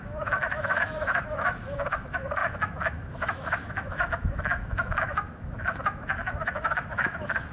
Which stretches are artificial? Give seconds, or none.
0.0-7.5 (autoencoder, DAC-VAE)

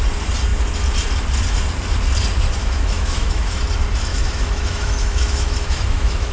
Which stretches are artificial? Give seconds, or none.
2.6-3.6 (autoencoder, DAC-VAE); 4.1-6.3

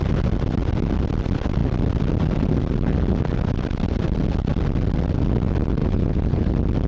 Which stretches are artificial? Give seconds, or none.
5.8-6.5 (vocoder, Vocos)

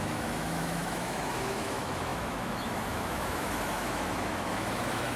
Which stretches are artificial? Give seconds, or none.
0.0-5.2 (autoencoder, DAC-VAE)

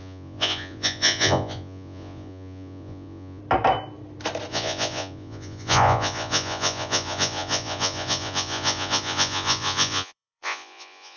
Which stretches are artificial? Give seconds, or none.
0.0-3.4 (vocoder, Vocos); 4.5-11.2